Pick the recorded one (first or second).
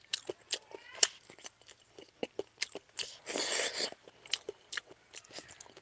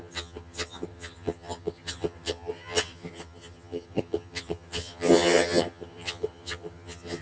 first